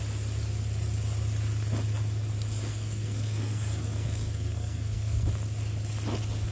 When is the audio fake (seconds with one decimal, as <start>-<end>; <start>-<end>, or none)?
2.7-5.3